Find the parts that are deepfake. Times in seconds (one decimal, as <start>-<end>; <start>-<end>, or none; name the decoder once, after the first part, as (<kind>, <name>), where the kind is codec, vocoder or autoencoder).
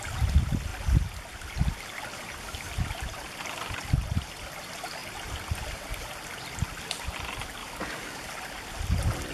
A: 7.6-8.3 (codec, DAC)